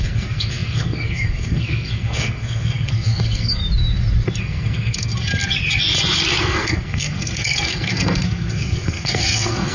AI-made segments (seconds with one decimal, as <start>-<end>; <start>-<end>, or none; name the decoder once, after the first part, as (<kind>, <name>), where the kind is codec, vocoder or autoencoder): 0.0-3.6 (codec, SNAC); 4.4-5.1; 6.4-9.7